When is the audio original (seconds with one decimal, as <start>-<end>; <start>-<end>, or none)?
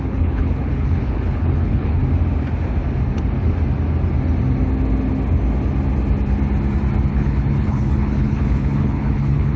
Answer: 2.0-7.1